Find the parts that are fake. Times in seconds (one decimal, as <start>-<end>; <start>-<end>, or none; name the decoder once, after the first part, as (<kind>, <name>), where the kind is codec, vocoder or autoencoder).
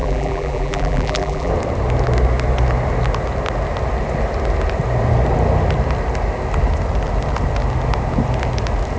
0.0-1.5 (vocoder, BigVGAN v2)